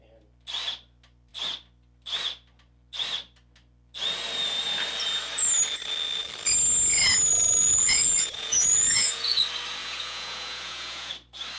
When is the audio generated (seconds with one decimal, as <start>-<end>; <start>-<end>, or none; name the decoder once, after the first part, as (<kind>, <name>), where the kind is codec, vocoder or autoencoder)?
7.3-9.4 (vocoder, Vocos); 9.8-11.1